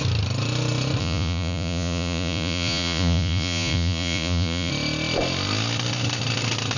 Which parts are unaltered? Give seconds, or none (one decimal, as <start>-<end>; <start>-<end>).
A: 0.0-1.0; 4.7-6.8